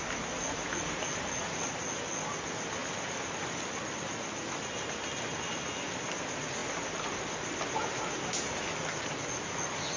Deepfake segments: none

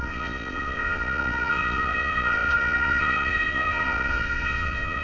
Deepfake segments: 0.0-5.0 (vocoder, Vocos)

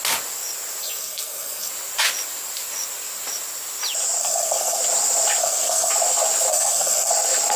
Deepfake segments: 0.8-1.7 (codec, SNAC); 4.2-4.8; 5.4-5.9; 6.5-7.1